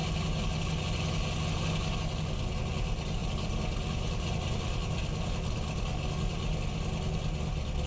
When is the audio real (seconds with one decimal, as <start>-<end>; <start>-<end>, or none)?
0.0-7.9